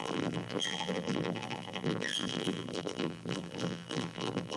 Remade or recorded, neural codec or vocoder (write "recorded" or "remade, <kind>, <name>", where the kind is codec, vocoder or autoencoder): remade, vocoder, BigVGAN v2